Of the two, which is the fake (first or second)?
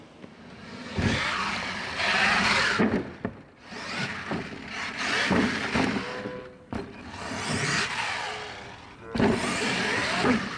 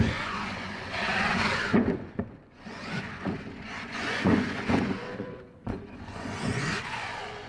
second